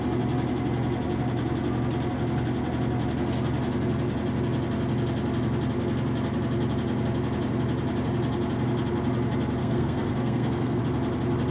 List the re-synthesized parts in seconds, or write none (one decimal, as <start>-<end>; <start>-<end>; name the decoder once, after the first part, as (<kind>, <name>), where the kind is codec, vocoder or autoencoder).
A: 9.6-10.8 (codec, SNAC)